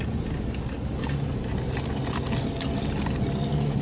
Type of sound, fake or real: real